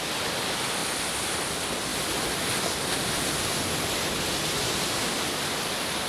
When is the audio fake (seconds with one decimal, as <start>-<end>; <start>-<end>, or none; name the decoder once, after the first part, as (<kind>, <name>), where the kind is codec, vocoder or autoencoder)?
none